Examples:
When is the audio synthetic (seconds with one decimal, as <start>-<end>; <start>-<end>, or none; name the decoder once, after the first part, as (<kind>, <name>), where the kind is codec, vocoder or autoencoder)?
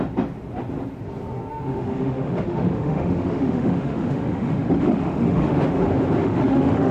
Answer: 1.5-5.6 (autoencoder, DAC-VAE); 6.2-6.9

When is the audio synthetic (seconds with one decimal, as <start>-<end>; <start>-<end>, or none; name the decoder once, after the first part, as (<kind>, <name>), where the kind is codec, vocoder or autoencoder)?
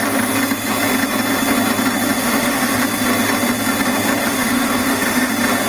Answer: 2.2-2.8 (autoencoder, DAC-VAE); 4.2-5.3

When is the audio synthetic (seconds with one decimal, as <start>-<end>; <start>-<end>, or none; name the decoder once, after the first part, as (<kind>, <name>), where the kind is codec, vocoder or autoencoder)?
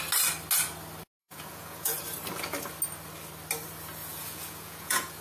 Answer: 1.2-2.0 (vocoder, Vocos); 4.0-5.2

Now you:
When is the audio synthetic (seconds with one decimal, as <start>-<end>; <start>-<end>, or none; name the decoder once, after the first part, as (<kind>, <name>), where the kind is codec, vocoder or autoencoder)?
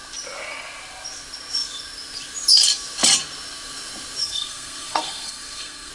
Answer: 4.2-5.9 (codec, SNAC)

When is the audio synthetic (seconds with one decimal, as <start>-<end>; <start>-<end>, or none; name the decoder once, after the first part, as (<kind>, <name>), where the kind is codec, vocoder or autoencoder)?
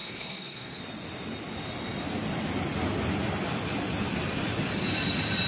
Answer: 0.0-0.8 (codec, SNAC)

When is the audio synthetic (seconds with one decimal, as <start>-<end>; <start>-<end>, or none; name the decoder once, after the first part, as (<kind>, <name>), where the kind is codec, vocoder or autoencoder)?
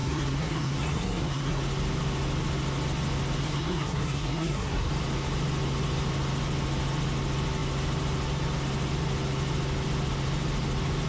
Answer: 0.0-1.6 (codec, SNAC); 3.4-4.9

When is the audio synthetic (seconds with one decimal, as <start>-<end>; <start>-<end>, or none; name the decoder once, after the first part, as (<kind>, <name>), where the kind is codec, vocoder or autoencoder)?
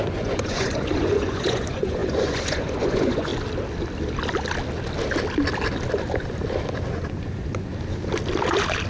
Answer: 0.0-3.3 (vocoder, Vocos); 6.9-7.7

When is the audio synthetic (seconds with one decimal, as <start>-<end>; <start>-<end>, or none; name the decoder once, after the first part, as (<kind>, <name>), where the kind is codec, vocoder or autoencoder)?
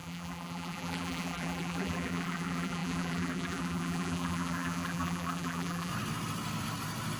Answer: 0.0-5.9 (vocoder, BigVGAN v2)